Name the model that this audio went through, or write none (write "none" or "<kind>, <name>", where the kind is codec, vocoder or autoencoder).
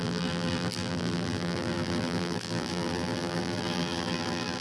vocoder, BigVGAN v2